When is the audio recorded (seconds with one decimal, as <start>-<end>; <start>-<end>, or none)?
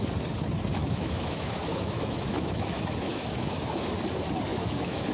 0.0-0.8; 3.9-4.5